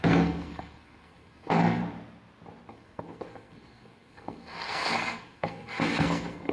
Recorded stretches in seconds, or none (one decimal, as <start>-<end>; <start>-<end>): 1.8-2.7